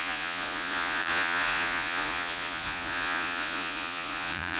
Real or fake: fake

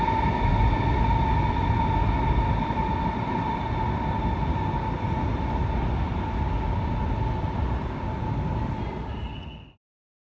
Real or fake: real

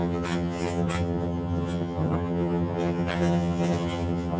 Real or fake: fake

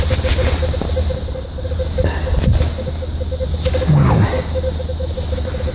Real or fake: real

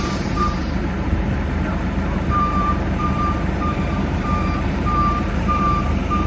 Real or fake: fake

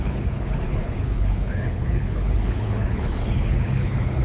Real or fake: fake